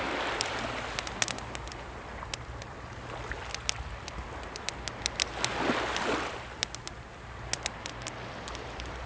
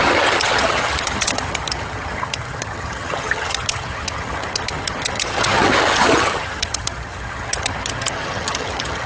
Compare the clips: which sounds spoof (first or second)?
second